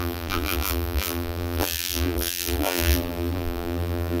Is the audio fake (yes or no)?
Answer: yes